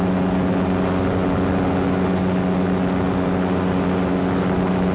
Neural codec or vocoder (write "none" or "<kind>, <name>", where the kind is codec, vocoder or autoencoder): none